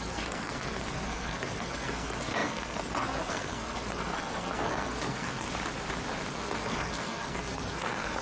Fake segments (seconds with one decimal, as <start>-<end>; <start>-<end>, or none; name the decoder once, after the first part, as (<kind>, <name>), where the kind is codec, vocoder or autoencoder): 0.0-5.5 (codec, SNAC); 6.3-8.2

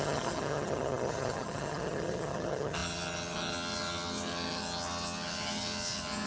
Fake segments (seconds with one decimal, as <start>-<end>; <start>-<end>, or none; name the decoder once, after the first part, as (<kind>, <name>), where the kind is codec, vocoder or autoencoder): 0.0-6.3 (vocoder, HiFi-GAN)